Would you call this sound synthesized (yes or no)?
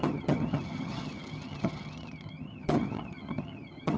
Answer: yes